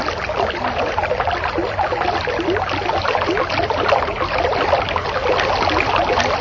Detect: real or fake real